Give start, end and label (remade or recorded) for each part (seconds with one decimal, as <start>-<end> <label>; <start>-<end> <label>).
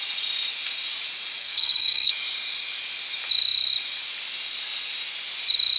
0.0-1.4 recorded; 1.4-2.1 remade; 2.1-5.8 recorded